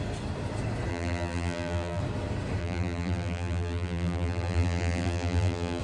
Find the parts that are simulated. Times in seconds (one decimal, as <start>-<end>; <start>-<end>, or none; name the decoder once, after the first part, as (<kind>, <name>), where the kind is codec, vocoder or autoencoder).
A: 0.9-2.0 (vocoder, BigVGAN v2); 2.6-5.8